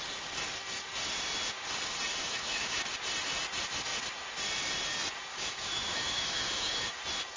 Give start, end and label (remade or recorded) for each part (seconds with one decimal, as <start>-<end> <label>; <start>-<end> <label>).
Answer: 0.0-2.1 recorded; 2.1-2.8 remade; 2.8-5.3 recorded; 5.3-7.0 remade; 7.0-7.4 recorded